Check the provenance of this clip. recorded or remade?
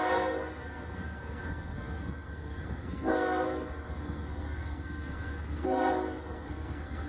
remade